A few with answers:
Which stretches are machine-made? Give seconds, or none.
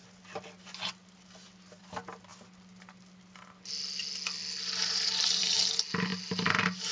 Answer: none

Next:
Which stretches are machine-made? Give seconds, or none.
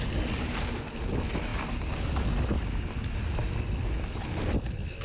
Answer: none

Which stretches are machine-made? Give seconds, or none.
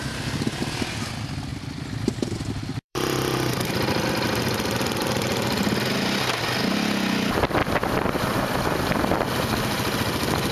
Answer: 1.5-4.1 (vocoder, BigVGAN v2); 7.6-8.8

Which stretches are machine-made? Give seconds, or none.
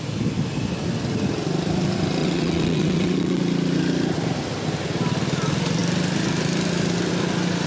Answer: 2.2-3.4 (vocoder, WaveNeXt)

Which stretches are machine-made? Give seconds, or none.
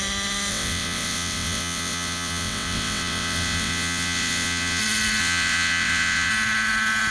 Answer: 0.5-4.8 (vocoder, WaveNeXt); 5.2-6.3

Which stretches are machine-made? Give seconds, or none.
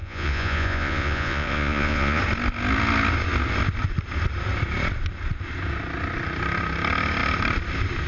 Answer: 0.0-2.2 (vocoder, Vocos)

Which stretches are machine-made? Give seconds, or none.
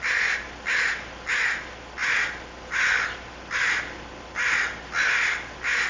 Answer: none